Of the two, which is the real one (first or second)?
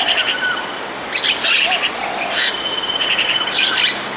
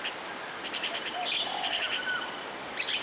first